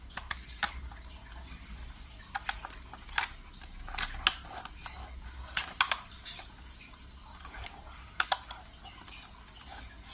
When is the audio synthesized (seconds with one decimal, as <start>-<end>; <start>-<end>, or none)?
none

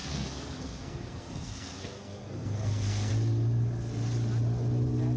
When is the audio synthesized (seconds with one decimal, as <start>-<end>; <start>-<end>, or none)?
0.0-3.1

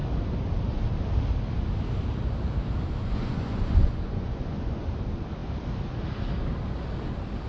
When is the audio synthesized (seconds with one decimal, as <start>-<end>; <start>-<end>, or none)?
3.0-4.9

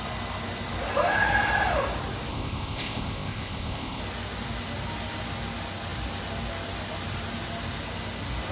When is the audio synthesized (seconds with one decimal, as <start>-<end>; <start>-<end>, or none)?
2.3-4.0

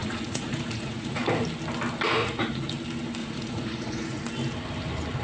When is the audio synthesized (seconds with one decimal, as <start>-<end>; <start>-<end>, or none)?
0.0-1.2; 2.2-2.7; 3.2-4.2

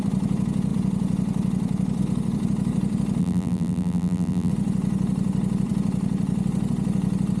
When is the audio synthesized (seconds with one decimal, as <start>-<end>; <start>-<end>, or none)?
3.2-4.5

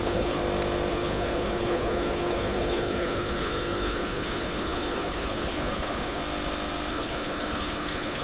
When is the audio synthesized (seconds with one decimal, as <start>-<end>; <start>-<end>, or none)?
0.0-0.4; 0.9-6.2; 6.9-8.2